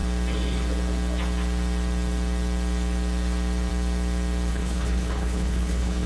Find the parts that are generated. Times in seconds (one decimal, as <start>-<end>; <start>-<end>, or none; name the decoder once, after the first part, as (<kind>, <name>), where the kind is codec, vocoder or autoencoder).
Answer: 4.5-6.1 (codec, HILCodec)